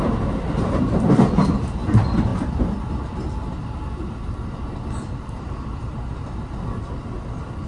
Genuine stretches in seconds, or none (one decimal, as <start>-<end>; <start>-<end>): none